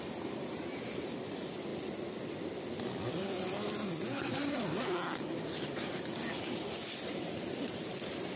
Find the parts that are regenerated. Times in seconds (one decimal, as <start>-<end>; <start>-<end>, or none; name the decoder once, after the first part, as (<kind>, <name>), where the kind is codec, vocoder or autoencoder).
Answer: none